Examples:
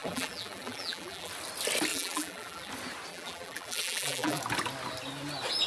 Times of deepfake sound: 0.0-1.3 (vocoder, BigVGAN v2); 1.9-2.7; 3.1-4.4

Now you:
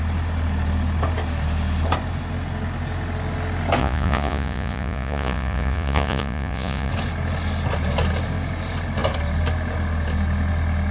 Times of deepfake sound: 3.8-6.9 (vocoder, Vocos)

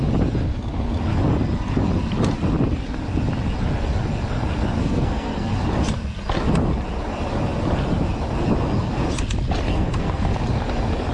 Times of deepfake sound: 4.8-5.5 (codec, SNAC); 9.7-10.3

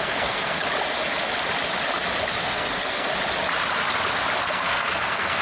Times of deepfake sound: 0.0-0.6 (codec, SNAC); 2.4-3.1; 4.4-5.4

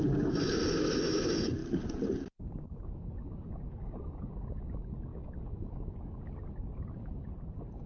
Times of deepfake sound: 5.1-5.7 (autoencoder, DAC-VAE)

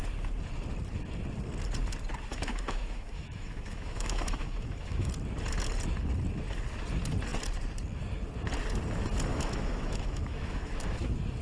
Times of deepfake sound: 2.3-5.1 (autoencoder, DAC-VAE); 9.3-10.7